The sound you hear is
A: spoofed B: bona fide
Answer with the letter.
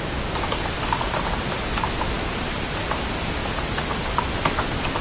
B